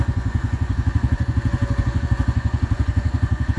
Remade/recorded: remade